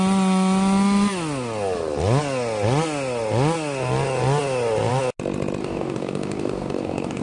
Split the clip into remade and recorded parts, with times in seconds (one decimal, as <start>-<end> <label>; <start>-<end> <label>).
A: 0.0-5.6 recorded; 5.6-7.2 remade